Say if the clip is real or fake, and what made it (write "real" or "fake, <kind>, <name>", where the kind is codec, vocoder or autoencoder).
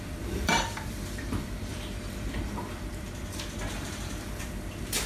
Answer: fake, vocoder, BigVGAN v2